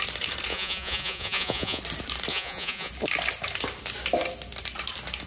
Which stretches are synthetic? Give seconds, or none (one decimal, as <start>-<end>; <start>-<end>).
0.5-1.8; 2.3-2.9